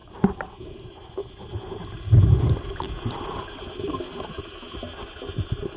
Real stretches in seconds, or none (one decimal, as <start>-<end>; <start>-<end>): 0.0-5.8